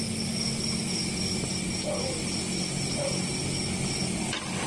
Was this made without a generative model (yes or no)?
yes